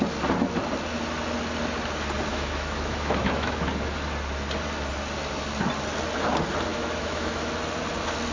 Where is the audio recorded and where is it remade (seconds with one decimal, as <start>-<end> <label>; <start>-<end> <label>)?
0.0-2.3 recorded; 2.3-3.7 remade; 3.7-6.7 recorded; 6.7-7.5 remade; 7.5-8.3 recorded